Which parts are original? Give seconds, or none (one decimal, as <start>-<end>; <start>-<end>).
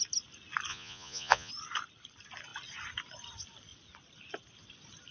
0.0-0.7; 1.5-5.1